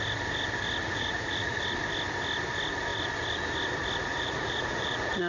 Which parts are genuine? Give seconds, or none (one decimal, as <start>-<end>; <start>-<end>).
0.0-0.8; 1.6-4.1